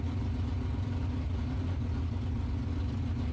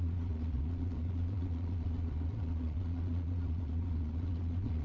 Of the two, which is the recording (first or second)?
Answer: first